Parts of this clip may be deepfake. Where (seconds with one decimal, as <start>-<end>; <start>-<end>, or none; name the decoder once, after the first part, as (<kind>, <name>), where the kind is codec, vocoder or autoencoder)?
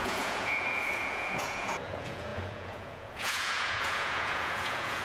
0.0-5.0 (vocoder, Vocos)